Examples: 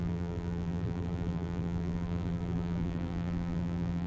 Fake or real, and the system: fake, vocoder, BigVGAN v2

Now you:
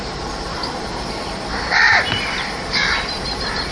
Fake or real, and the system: fake, vocoder, BigVGAN v2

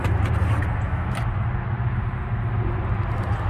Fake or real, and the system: real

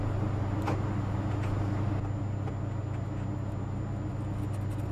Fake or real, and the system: real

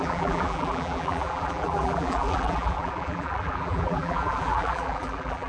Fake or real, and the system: fake, vocoder, BigVGAN v2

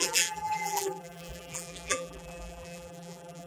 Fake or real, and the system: fake, vocoder, BigVGAN v2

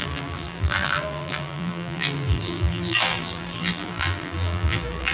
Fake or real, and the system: fake, vocoder, BigVGAN v2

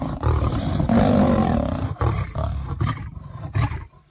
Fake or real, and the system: fake, vocoder, BigVGAN v2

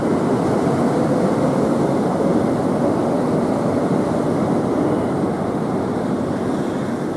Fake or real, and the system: real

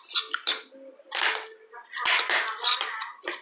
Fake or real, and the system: real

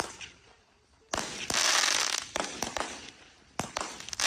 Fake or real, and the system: real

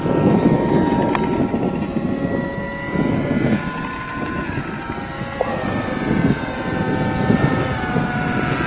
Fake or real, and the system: real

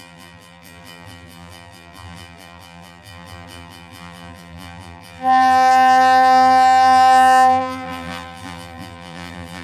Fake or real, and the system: fake, vocoder, BigVGAN v2